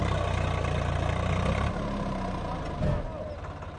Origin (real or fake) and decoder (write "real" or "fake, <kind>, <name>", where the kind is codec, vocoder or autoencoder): real